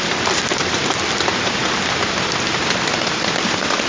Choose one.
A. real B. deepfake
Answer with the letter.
B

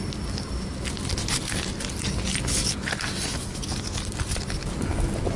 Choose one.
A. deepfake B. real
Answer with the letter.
B